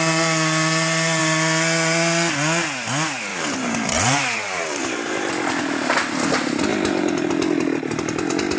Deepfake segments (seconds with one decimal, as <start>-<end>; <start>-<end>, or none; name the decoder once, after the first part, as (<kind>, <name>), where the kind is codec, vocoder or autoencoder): 3.3-5.3 (vocoder, BigVGAN v2); 6.7-7.3